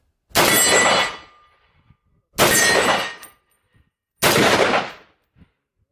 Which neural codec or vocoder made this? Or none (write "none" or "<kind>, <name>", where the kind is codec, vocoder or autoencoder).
none